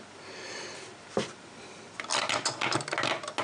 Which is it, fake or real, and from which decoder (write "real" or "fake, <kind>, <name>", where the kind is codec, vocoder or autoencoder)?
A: real